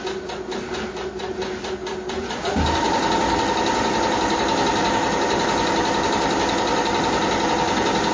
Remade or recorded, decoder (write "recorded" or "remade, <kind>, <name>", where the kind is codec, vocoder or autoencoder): recorded